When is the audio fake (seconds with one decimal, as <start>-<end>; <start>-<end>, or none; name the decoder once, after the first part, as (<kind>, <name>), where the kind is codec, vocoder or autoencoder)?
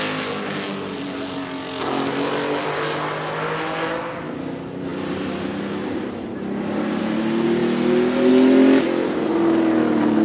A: none